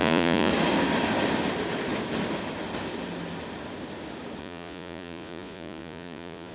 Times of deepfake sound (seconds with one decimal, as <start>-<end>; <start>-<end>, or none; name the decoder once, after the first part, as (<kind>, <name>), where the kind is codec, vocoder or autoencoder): 0.0-0.5 (vocoder, Vocos); 4.4-6.5

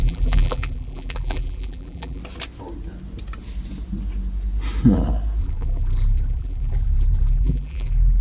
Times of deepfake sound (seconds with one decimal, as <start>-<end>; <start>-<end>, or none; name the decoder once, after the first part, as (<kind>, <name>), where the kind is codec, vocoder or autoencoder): 0.0-2.2 (vocoder, BigVGAN v2); 5.4-8.2

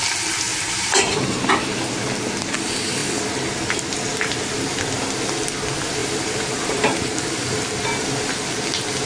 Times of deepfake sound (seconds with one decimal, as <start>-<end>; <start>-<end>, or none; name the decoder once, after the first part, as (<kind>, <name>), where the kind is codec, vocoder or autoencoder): 0.5-1.5 (vocoder, BigVGAN v2); 6.0-7.6

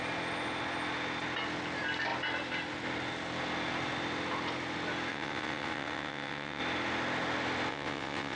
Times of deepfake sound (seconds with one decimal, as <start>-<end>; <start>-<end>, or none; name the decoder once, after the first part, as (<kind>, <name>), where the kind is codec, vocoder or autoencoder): 5.1-6.6 (vocoder, WaveNeXt); 7.7-8.4

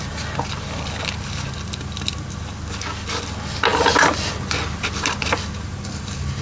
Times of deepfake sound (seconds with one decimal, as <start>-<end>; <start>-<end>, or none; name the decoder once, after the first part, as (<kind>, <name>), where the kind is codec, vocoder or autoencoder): none

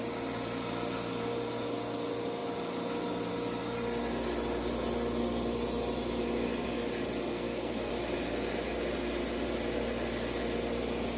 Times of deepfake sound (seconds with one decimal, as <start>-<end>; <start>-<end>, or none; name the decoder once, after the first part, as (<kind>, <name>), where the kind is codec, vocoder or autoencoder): 7.3-7.9 (codec, SNAC)